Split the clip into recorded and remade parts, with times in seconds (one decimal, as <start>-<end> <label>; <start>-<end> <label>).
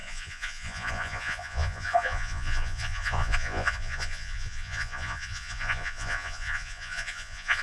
0.0-7.6 remade